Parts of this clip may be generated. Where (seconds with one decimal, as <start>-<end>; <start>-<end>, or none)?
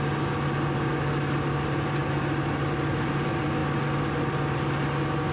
none